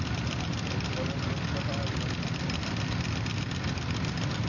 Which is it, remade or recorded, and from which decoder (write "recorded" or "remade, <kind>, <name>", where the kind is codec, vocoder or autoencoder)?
recorded